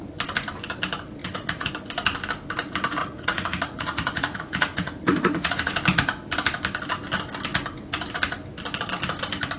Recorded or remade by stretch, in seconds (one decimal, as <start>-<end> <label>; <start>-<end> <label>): 0.0-1.2 recorded; 1.2-1.7 remade; 1.7-3.0 recorded; 3.0-5.7 remade; 5.7-9.6 recorded